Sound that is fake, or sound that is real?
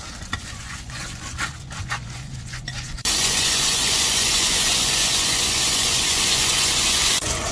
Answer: fake